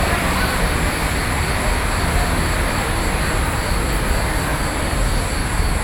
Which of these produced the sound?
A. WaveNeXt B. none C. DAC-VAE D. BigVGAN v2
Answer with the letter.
B